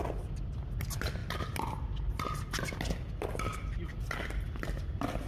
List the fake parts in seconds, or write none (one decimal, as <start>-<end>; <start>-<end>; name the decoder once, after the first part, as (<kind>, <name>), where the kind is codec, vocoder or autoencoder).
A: none